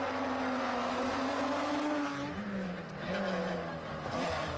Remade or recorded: recorded